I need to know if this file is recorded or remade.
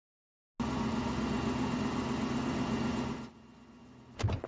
recorded